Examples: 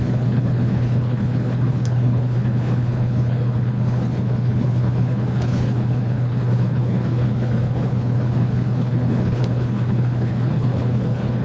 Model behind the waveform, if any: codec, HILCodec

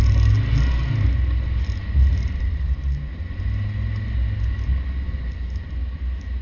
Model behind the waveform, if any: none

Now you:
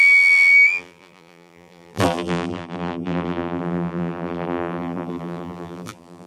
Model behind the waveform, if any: vocoder, BigVGAN v2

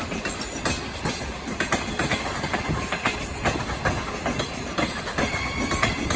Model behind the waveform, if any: none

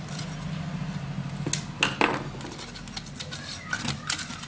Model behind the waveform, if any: none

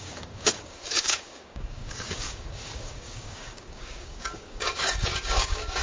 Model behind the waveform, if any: codec, DAC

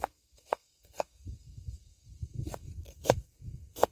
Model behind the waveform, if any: codec, SNAC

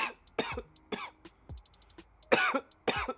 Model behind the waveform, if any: none